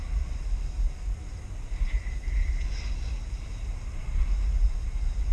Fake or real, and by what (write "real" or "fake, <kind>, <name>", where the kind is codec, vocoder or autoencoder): real